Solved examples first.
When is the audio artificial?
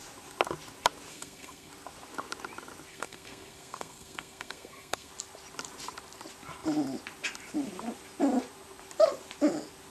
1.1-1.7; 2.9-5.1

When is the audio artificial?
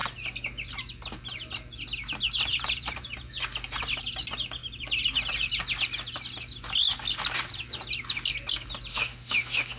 8.9-9.8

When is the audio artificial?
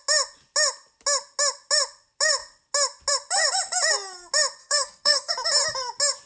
4.6-5.3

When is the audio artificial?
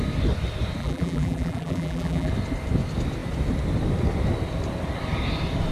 0.8-2.3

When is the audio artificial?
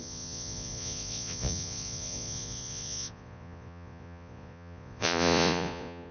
0.0-6.1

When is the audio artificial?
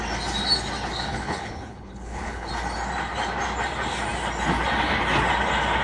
1.1-2.5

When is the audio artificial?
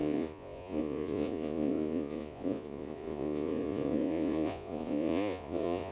0.0-5.9